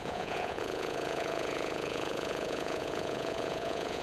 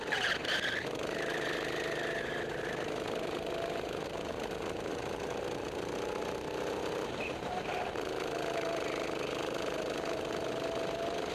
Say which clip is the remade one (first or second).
first